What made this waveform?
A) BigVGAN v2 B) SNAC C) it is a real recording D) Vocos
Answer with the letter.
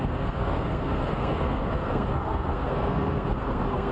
B